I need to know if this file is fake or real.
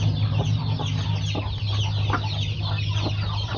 real